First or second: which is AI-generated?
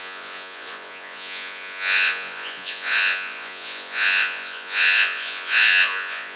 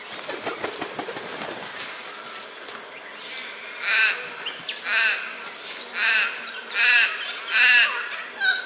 first